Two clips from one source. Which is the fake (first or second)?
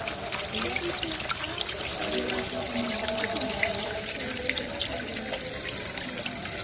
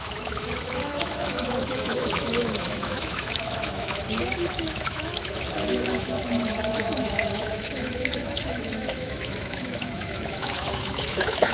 second